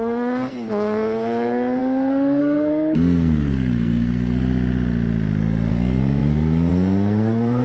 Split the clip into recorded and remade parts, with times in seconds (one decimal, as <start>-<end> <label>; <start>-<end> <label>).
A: 0.0-4.4 remade; 4.4-5.7 recorded; 5.7-7.6 remade

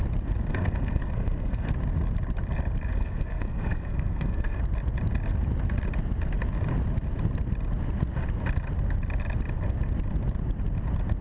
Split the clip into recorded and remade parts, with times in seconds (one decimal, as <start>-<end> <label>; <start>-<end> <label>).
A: 0.0-0.5 recorded; 0.5-1.7 remade; 1.7-3.0 recorded; 3.0-4.6 remade; 4.6-11.2 recorded